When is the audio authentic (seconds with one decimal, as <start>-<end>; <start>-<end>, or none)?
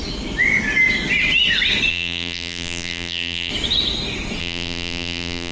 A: 0.0-1.9; 3.5-4.4